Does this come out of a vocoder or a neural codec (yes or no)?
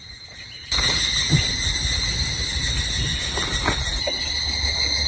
no